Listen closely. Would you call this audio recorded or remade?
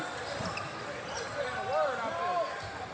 recorded